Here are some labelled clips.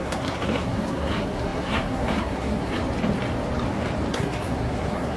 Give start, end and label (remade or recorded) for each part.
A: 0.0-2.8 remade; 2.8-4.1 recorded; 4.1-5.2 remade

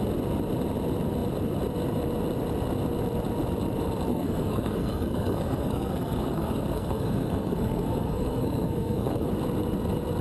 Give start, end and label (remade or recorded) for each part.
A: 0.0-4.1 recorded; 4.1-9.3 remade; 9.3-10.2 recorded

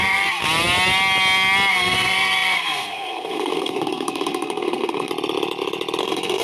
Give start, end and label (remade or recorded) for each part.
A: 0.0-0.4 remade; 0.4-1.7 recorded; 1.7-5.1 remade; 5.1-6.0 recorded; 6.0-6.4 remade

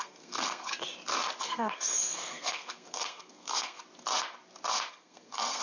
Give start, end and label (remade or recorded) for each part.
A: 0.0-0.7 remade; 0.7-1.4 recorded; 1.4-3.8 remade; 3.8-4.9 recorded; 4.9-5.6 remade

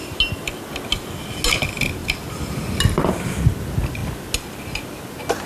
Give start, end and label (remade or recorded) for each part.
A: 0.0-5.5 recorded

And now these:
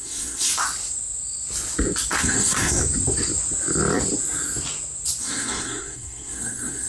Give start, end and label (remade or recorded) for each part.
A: 0.0-0.5 remade; 0.5-2.2 recorded; 2.2-2.8 remade; 2.8-5.2 recorded; 5.2-6.9 remade

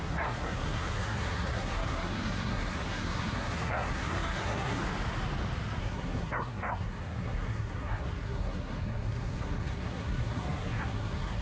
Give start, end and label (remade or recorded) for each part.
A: 0.0-4.8 remade; 4.8-5.8 recorded; 5.8-11.4 remade